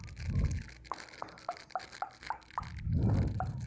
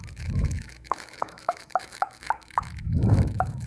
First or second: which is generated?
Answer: second